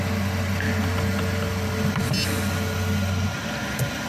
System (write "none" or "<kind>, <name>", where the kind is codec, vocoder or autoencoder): none